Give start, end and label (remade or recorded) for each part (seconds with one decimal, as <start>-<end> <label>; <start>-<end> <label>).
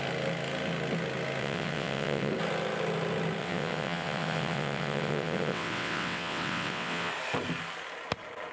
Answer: 0.0-1.4 recorded; 1.4-2.3 remade; 2.3-3.4 recorded; 3.4-7.1 remade; 7.1-8.5 recorded